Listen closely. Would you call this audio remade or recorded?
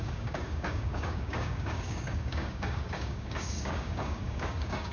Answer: remade